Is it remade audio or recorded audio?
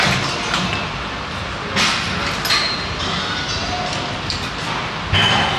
recorded